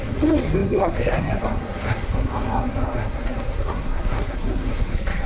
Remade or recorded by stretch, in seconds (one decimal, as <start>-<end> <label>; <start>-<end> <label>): 0.0-5.3 remade